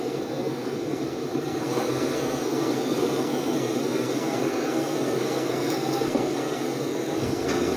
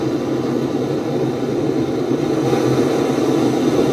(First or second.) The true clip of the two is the second